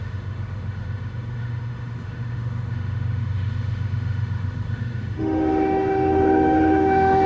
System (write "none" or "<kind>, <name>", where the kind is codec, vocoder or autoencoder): autoencoder, DAC-VAE